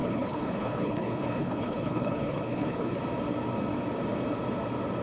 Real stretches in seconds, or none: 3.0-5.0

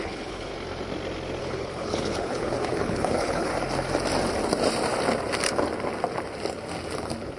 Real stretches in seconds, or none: 0.5-1.4; 3.5-7.4

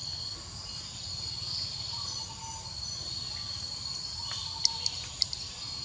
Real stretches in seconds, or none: 0.0-5.8

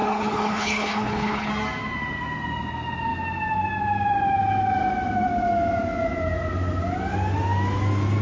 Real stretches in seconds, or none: 1.5-8.2

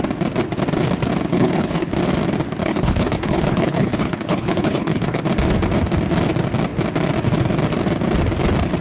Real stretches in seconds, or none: 0.0-1.3; 1.9-2.6; 5.2-8.8

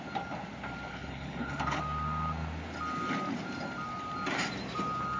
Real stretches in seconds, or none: 0.0-0.9; 1.8-5.2